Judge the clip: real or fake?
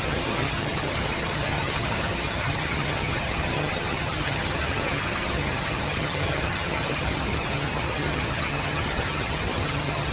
fake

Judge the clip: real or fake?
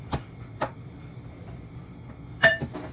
fake